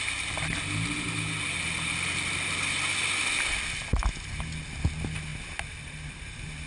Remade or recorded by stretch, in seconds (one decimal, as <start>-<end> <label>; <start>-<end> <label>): 0.0-6.7 recorded